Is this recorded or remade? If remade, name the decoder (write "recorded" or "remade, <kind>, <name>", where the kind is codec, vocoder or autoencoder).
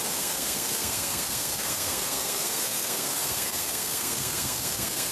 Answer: remade, codec, SNAC